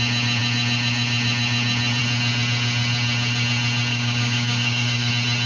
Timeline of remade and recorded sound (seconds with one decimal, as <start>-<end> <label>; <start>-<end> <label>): 0.0-3.9 recorded; 3.9-5.1 remade; 5.1-5.5 recorded